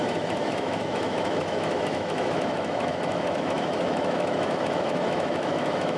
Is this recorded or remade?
remade